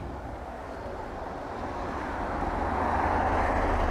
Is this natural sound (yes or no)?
yes